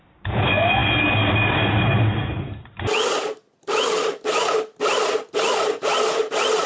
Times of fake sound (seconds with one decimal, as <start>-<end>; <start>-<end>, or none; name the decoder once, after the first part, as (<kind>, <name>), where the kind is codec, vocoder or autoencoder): none